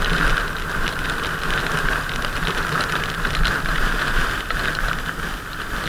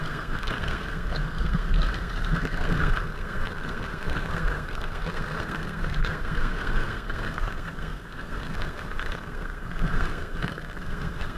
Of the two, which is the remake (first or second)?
second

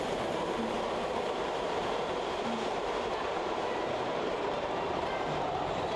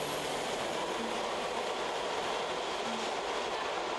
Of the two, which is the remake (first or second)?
first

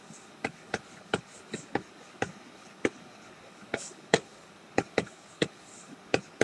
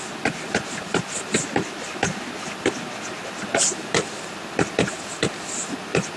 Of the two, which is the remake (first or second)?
first